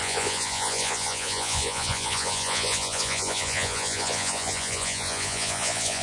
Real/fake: fake